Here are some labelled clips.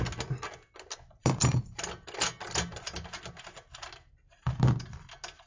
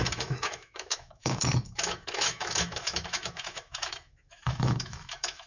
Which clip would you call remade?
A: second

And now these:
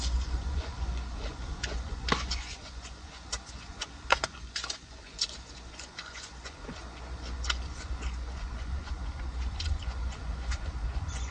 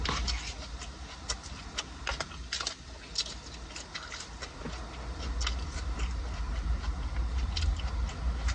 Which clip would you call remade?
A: first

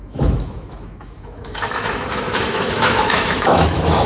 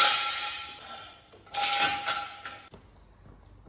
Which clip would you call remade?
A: first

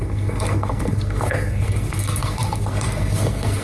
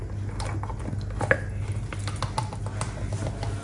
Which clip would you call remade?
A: first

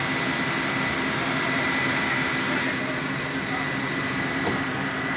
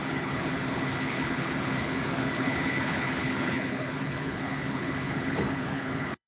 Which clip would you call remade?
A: second